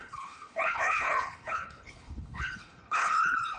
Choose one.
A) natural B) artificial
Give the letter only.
B